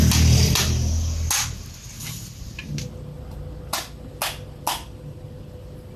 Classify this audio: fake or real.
real